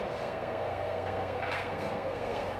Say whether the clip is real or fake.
fake